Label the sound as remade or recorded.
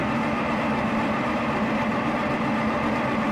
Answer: remade